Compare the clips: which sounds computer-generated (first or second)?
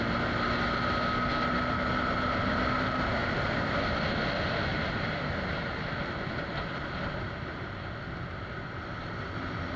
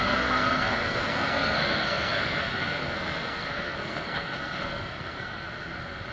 second